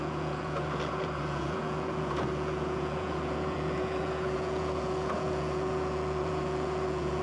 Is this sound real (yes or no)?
no